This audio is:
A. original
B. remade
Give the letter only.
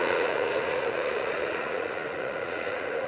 B